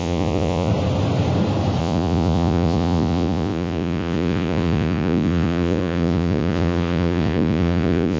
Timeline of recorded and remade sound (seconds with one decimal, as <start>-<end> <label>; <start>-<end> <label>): 0.0-0.7 remade; 0.7-1.8 recorded; 1.8-8.2 remade